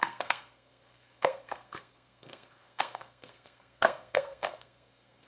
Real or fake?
fake